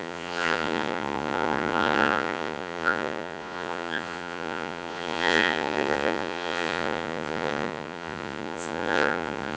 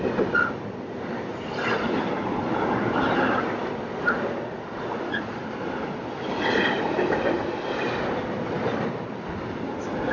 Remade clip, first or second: first